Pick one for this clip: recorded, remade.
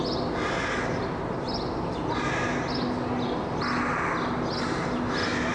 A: recorded